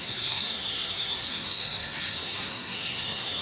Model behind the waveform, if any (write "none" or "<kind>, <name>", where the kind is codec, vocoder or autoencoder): codec, SNAC